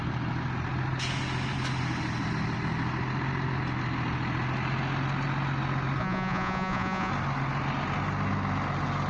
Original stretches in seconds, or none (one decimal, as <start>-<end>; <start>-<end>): 0.0-6.0; 7.1-9.1